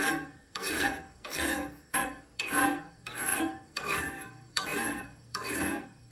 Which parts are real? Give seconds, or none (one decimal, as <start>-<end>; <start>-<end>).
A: none